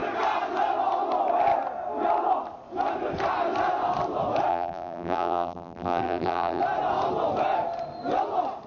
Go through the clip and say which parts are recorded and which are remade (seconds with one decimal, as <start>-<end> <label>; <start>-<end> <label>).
0.0-4.5 recorded; 4.5-6.6 remade; 6.6-8.7 recorded